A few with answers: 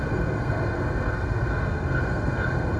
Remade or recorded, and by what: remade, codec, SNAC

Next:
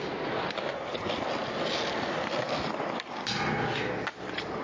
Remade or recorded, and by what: recorded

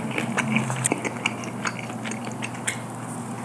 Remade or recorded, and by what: recorded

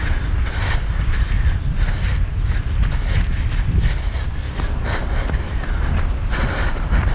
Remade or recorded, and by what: recorded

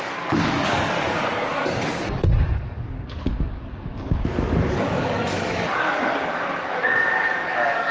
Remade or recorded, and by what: remade, codec, DAC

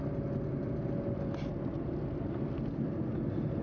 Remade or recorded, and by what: recorded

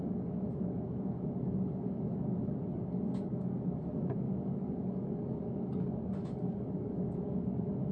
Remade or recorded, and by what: remade, codec, DAC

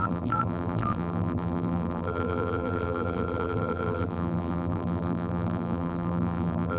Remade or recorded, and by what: remade, vocoder, BigVGAN v2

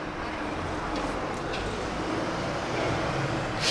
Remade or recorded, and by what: recorded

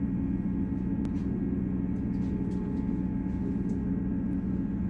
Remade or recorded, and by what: recorded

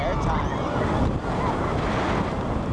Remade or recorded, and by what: recorded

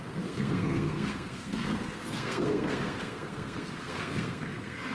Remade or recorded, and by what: remade, codec, SNAC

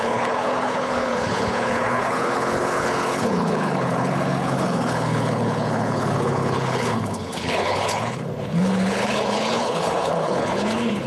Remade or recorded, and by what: remade, codec, HILCodec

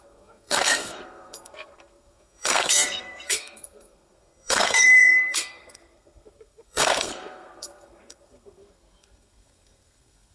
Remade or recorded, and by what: remade, codec, SNAC